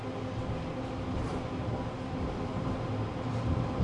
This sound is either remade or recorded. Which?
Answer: recorded